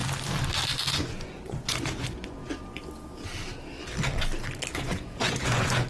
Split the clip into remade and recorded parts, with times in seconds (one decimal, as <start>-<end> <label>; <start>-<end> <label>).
0.0-1.0 recorded; 1.0-2.4 remade; 2.4-4.7 recorded; 4.7-5.9 remade